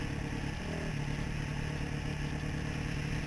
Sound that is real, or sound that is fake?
real